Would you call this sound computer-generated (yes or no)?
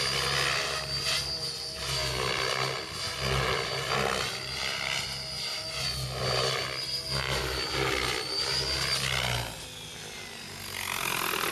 no